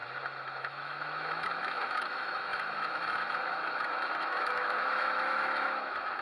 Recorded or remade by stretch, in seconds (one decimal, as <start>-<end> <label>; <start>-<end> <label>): 0.0-0.6 recorded; 0.6-6.2 remade